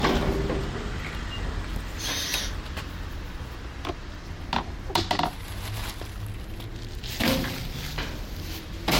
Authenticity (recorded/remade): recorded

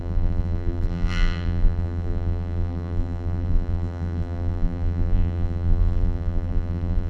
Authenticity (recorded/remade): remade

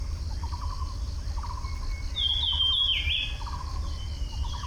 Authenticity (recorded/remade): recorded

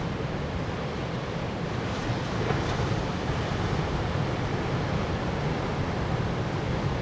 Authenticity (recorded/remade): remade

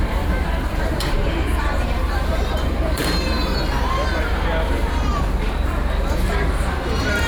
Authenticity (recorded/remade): remade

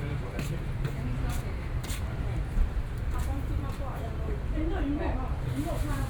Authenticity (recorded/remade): remade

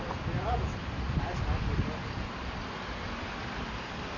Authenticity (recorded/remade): recorded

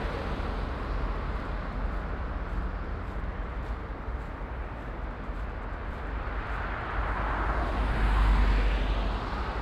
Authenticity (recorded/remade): recorded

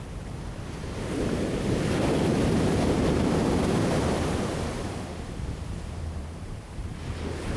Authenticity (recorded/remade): remade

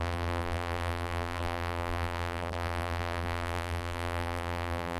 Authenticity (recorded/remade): remade